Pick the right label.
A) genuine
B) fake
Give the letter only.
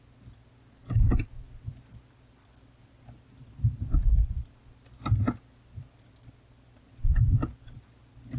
A